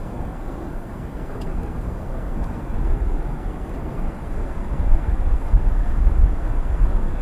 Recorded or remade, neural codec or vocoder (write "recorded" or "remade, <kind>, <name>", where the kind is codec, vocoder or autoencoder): remade, codec, SNAC